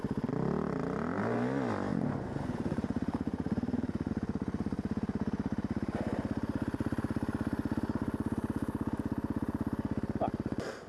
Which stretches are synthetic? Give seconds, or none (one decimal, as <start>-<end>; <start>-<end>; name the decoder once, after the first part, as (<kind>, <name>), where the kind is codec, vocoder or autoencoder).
1.9-4.1 (vocoder, Vocos)